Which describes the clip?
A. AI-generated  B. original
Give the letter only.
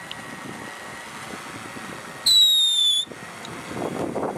B